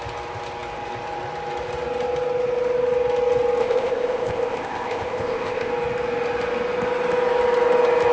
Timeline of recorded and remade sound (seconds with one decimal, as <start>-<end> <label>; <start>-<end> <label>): 0.0-3.6 recorded; 3.6-5.7 remade; 5.7-8.1 recorded